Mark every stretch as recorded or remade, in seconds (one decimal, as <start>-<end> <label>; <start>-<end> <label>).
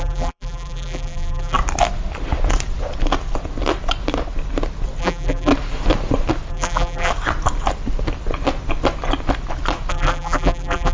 0.0-1.6 remade; 1.6-5.0 recorded; 5.0-5.5 remade; 5.5-6.5 recorded; 6.5-7.1 remade; 7.1-9.9 recorded; 9.9-10.9 remade